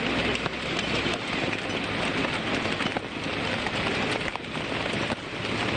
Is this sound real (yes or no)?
yes